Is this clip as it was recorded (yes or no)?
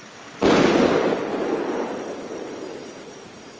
yes